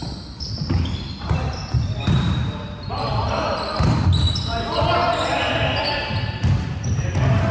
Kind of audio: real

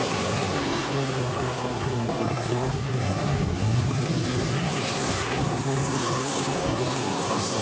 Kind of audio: fake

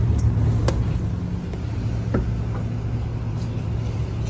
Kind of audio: real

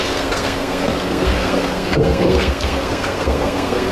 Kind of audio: fake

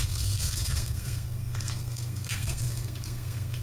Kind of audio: fake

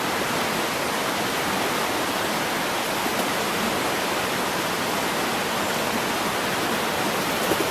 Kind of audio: real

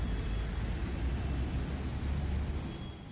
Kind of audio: real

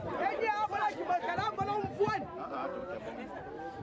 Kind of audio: real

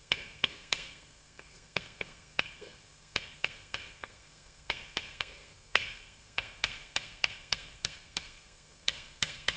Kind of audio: fake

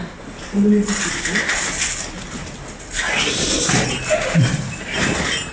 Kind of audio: real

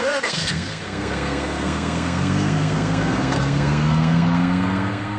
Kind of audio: fake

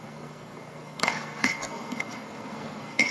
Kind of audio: fake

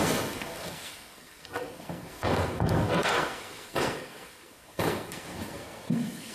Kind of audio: fake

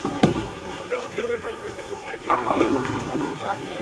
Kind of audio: fake